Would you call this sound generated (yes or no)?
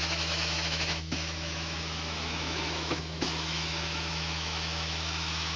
yes